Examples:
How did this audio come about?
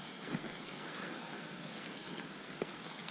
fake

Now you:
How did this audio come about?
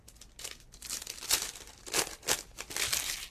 real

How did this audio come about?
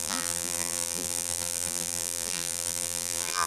fake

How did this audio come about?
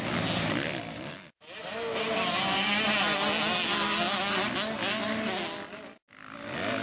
real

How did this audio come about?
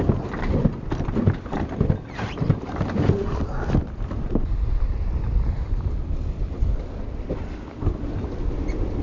real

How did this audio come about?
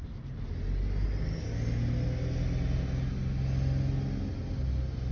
real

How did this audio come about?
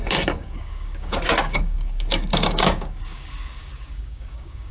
fake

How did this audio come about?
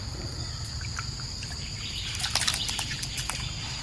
real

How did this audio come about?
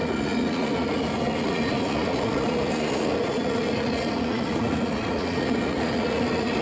fake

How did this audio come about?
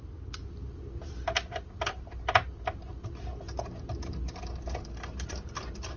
real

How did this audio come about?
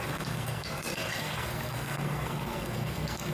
fake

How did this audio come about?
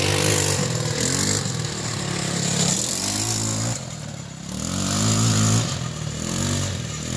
real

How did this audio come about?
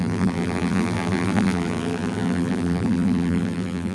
fake